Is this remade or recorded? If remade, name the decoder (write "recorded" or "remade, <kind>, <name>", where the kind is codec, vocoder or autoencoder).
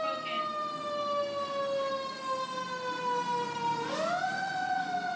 recorded